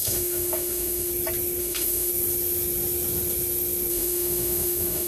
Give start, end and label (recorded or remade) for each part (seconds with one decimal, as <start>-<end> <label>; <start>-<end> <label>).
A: 0.0-1.1 remade; 1.1-1.6 recorded; 1.6-2.1 remade; 2.1-3.9 recorded; 3.9-5.1 remade